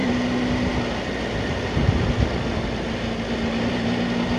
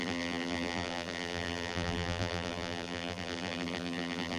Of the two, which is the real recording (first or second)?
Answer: first